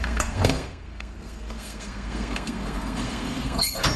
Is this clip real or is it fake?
fake